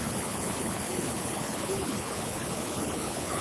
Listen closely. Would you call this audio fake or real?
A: fake